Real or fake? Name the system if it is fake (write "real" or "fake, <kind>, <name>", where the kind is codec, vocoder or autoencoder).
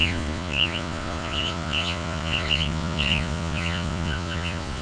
fake, vocoder, Vocos